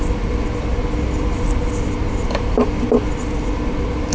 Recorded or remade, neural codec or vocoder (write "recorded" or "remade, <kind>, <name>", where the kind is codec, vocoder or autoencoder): recorded